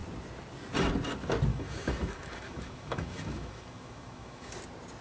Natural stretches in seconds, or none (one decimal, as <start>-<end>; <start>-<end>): 0.0-1.5; 4.5-5.0

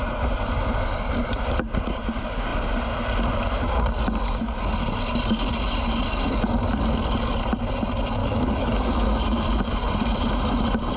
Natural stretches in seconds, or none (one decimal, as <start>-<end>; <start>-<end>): 0.0-8.2; 9.5-11.0

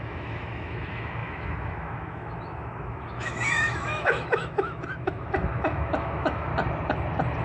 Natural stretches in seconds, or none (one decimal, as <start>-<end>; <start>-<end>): 6.5-7.4